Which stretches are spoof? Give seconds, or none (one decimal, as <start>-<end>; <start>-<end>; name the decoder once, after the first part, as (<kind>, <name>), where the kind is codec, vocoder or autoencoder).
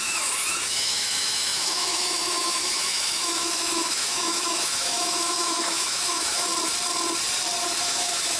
0.0-6.5 (autoencoder, DAC-VAE); 7.8-8.4